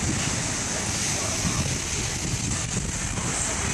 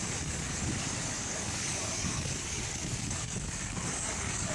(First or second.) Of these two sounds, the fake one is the second